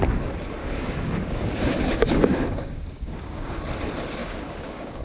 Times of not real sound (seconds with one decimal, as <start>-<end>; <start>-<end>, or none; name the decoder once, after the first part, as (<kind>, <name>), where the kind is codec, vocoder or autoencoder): 0.6-3.6 (codec, DAC); 4.2-5.0